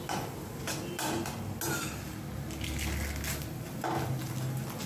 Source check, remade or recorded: recorded